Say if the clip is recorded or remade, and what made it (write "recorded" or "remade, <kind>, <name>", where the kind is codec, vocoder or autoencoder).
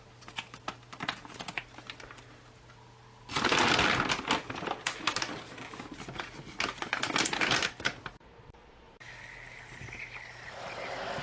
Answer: recorded